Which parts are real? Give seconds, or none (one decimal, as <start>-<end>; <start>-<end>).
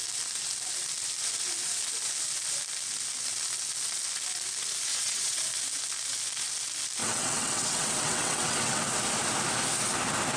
0.0-4.9; 5.5-7.0; 8.8-10.4